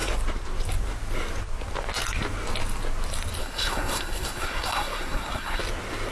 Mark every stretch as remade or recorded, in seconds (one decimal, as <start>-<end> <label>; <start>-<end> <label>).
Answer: 0.0-3.4 recorded; 3.4-5.6 remade; 5.6-6.1 recorded